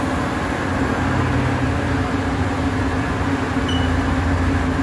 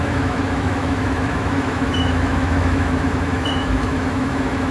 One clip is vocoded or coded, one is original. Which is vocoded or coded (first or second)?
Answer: second